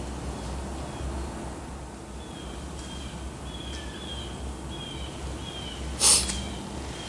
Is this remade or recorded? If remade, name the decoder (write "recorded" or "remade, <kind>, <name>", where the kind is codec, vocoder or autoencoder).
recorded